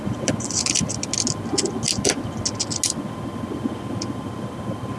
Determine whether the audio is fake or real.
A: real